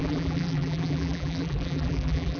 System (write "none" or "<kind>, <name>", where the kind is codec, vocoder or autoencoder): vocoder, BigVGAN v2